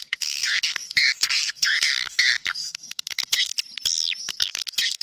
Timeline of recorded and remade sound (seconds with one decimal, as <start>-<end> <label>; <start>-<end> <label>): 0.0-3.5 remade; 3.5-4.2 recorded; 4.2-5.0 remade